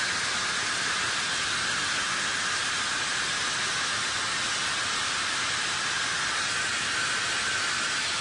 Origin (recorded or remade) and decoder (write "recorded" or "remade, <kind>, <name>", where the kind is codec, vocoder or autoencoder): recorded